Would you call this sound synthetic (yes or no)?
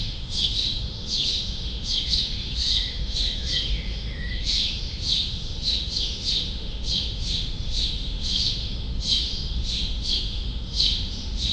yes